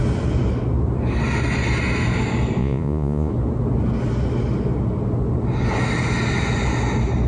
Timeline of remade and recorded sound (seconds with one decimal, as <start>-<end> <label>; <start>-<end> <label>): 0.0-2.6 recorded; 2.6-3.3 remade; 3.3-7.3 recorded